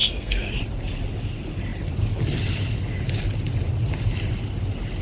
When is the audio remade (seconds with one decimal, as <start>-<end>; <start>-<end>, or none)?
0.0-0.5